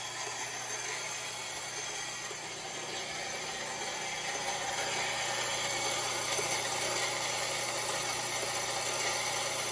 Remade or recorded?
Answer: recorded